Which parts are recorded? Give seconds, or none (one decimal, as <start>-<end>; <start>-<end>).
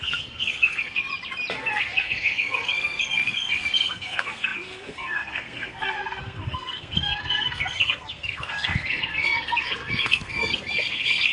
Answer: 1.0-1.5